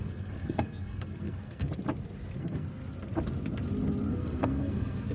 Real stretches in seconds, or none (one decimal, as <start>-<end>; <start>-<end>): 1.7-2.4; 2.8-4.1